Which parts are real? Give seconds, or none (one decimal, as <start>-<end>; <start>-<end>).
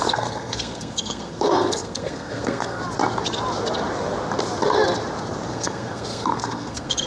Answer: 2.8-5.5